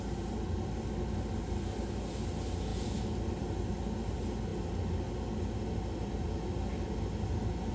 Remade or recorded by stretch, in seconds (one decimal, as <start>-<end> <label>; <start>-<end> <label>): 0.0-7.7 recorded